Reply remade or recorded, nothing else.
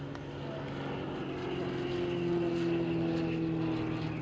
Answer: recorded